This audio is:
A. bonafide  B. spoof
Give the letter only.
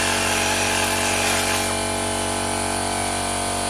A